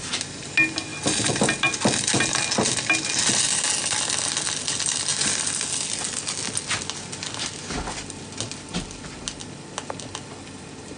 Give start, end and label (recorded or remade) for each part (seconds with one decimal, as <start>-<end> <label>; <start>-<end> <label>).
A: 0.0-11.0 recorded